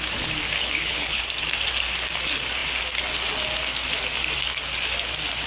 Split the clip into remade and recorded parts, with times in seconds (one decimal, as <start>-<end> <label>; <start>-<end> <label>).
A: 0.0-0.6 recorded; 0.6-1.2 remade; 1.2-5.5 recorded